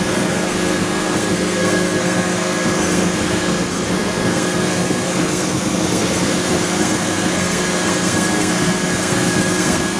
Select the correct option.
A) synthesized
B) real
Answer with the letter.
A